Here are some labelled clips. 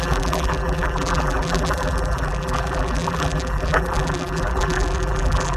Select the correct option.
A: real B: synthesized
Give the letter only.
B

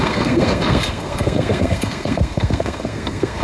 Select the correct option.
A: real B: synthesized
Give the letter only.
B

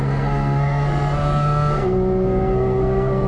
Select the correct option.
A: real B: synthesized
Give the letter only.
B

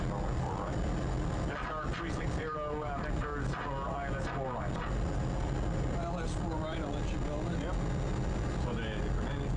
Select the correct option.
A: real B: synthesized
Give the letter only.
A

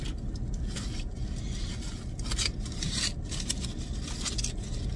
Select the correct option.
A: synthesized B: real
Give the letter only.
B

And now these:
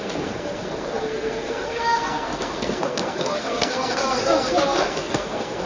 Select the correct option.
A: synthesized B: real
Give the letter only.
A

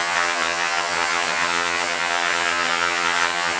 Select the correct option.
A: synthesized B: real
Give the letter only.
A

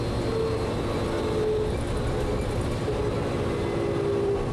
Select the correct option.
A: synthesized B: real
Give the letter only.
B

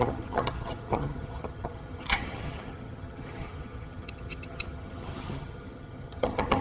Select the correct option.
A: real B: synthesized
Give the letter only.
B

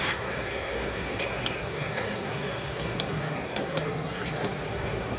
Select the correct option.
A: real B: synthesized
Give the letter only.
B